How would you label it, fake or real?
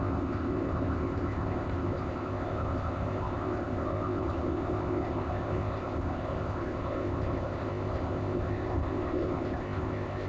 fake